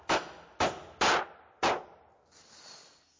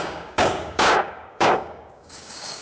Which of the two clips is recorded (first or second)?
first